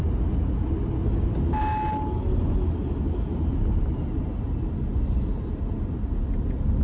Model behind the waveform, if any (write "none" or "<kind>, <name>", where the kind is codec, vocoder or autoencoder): none